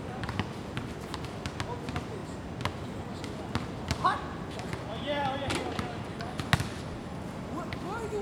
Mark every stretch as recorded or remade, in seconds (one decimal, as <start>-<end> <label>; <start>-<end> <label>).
0.0-8.2 recorded

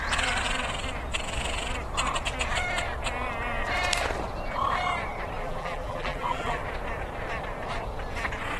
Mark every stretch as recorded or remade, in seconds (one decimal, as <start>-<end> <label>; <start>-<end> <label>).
0.0-5.4 recorded; 5.4-6.6 remade; 6.6-8.6 recorded

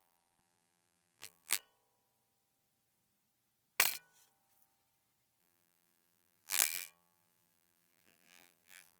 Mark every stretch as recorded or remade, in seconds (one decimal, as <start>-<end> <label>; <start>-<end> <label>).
0.0-1.6 remade; 1.6-5.4 recorded; 5.4-9.0 remade

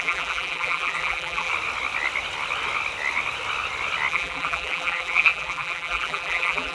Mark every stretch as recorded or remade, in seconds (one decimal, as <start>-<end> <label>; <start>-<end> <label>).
0.0-1.5 remade; 1.5-4.1 recorded; 4.1-6.7 remade